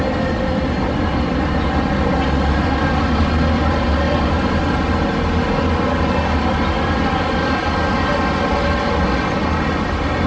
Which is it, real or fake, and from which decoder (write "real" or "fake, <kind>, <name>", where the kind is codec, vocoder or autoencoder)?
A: real